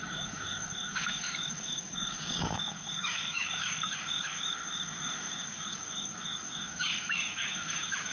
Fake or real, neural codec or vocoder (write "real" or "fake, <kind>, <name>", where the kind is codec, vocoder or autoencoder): fake, codec, DAC